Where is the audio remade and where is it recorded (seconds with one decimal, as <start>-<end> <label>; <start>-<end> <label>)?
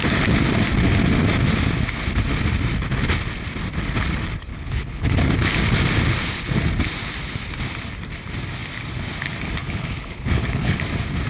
0.0-4.5 recorded; 4.5-5.2 remade; 5.2-9.6 recorded; 9.6-10.8 remade; 10.8-11.3 recorded